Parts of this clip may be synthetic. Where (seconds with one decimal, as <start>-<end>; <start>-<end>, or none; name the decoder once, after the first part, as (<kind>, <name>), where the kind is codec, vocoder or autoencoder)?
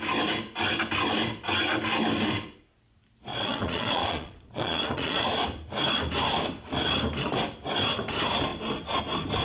3.3-5.2 (vocoder, Vocos)